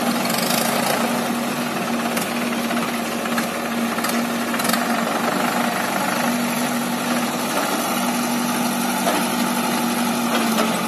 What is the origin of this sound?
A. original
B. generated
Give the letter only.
A